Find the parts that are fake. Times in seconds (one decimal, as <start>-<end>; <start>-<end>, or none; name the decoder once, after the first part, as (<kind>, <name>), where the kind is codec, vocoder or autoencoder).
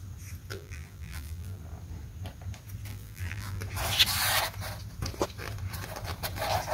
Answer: 0.5-1.6 (vocoder, BigVGAN v2); 2.9-3.6